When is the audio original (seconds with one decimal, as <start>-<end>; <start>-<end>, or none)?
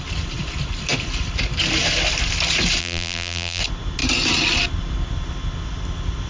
0.0-2.8; 3.6-6.3